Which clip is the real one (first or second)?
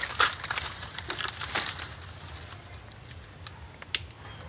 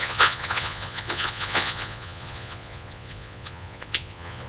first